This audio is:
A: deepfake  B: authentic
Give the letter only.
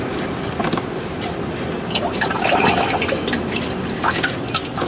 B